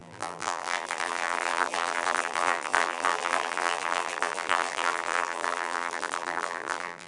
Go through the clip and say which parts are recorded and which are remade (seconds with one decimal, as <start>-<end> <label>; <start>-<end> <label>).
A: 0.0-7.1 remade